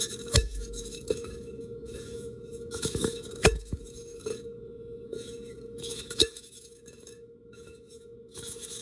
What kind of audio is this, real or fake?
fake